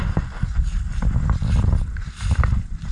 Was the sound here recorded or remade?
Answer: recorded